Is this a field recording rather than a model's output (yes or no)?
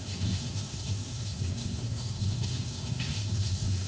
no